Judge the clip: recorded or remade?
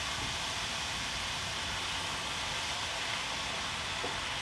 recorded